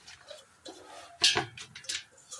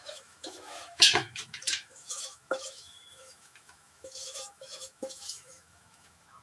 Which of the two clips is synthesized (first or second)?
second